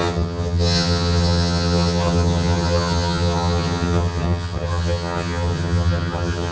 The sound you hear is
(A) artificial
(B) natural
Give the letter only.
A